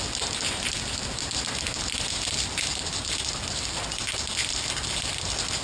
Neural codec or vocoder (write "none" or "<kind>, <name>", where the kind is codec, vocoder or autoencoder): none